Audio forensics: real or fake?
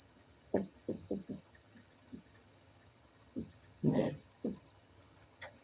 fake